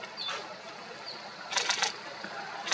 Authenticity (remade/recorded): recorded